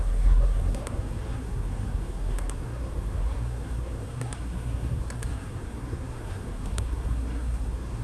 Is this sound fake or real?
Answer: fake